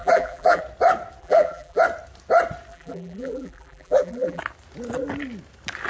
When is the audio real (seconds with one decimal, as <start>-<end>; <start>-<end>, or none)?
0.6-1.2; 1.8-2.7; 4.4-5.9